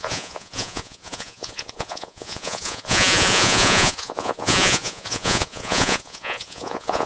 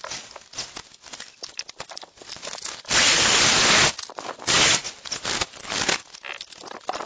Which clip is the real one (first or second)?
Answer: second